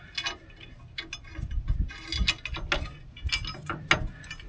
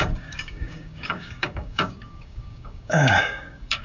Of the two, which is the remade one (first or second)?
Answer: second